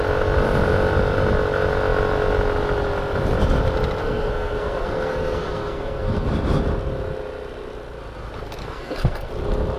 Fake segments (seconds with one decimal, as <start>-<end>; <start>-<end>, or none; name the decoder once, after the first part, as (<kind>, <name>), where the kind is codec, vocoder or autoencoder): 4.0-6.3 (codec, SNAC); 8.6-9.3